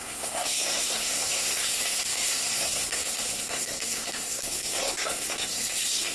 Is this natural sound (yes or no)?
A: no